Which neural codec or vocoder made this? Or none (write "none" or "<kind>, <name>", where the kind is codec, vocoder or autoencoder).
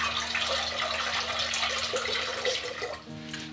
none